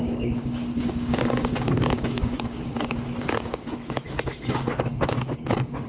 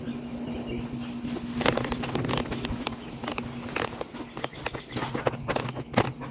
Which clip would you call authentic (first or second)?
second